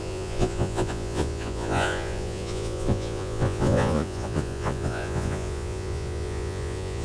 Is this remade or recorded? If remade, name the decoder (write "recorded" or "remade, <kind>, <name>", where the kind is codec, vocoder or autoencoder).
remade, vocoder, Vocos